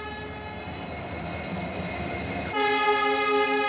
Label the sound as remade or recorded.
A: recorded